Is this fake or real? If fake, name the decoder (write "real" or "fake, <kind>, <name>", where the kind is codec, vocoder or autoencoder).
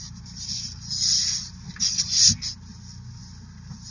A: real